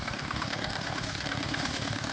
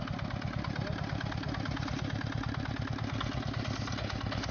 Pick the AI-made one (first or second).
first